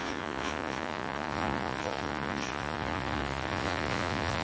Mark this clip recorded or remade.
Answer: remade